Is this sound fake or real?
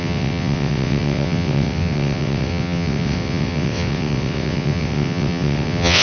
fake